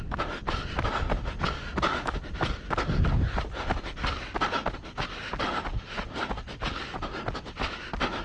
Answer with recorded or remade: recorded